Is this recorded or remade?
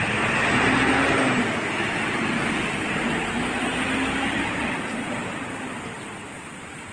recorded